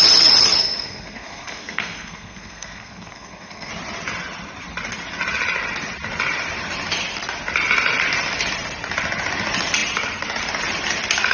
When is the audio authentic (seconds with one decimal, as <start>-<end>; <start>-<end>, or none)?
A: 0.0-0.6; 3.7-11.3